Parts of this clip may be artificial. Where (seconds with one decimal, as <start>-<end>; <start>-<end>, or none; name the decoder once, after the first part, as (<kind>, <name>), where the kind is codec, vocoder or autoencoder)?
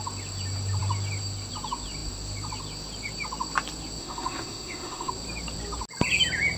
4.0-5.1 (autoencoder, DAC-VAE)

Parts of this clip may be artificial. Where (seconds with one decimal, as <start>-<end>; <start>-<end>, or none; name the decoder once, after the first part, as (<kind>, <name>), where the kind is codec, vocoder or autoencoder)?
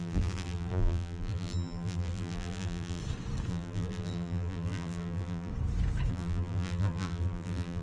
0.0-3.0 (vocoder, BigVGAN v2); 3.5-5.5; 6.1-7.8